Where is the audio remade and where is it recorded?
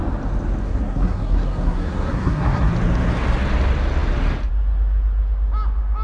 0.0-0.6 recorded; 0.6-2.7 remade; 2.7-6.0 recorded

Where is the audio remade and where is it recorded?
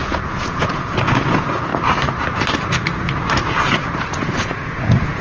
0.0-1.7 remade; 1.7-3.6 recorded; 3.6-5.2 remade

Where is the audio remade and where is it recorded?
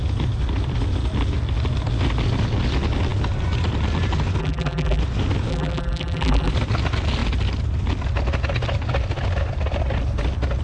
0.0-4.4 recorded; 4.4-5.0 remade; 5.0-5.5 recorded; 5.5-6.5 remade; 6.5-10.6 recorded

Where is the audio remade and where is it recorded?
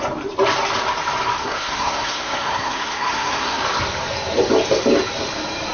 0.0-1.4 recorded; 1.4-3.6 remade; 3.6-5.7 recorded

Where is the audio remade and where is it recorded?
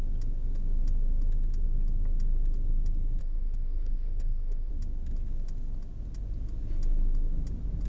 0.0-3.2 recorded; 3.2-4.7 remade; 4.7-7.9 recorded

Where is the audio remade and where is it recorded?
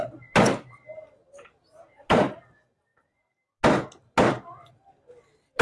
0.0-5.6 recorded